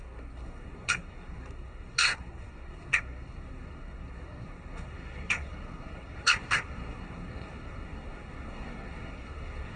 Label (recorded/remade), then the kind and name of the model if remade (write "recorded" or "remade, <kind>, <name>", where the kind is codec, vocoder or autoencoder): remade, codec, SNAC